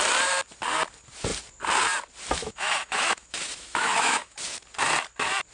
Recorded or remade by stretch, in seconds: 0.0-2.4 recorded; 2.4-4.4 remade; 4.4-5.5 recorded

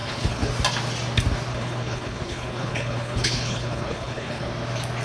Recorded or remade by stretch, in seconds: 0.0-0.5 remade; 0.5-1.5 recorded; 1.5-4.5 remade; 4.5-5.0 recorded

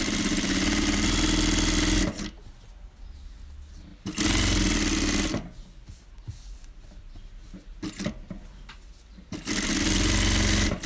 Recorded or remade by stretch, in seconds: 0.0-10.9 recorded